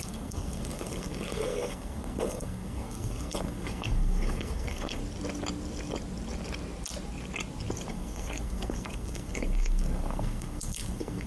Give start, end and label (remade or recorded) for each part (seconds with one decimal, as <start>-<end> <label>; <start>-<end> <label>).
0.0-5.0 remade; 5.0-7.9 recorded; 7.9-11.3 remade